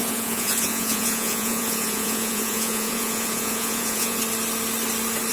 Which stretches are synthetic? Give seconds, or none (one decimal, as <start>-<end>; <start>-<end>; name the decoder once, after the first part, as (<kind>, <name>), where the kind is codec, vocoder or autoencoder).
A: 0.0-4.2 (vocoder, Vocos)